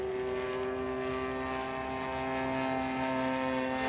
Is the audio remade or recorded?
recorded